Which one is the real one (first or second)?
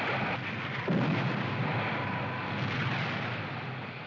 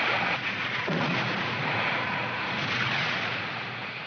first